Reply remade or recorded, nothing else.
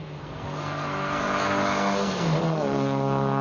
remade